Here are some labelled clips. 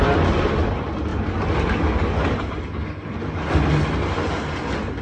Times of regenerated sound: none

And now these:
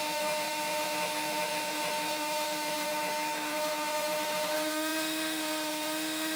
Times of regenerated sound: 0.0-6.4 (autoencoder, DAC-VAE)

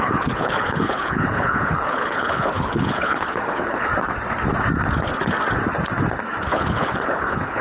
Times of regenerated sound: 0.0-3.9 (codec, HILCodec); 6.4-7.6

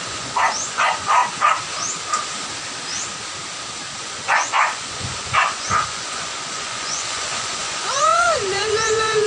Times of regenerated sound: 0.0-1.2 (vocoder, Vocos); 4.0-9.3

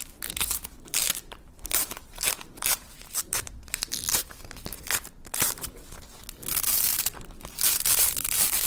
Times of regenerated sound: 0.0-8.7 (vocoder, BigVGAN v2)

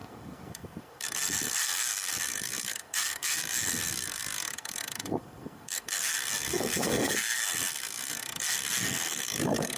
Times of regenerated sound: 0.0-9.8 (codec, SNAC)

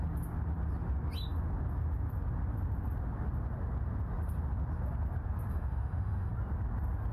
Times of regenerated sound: 5.5-6.3 (autoencoder, DAC-VAE)